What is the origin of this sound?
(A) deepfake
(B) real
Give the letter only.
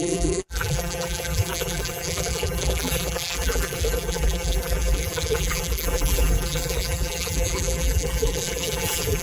A